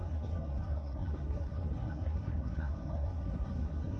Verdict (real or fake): fake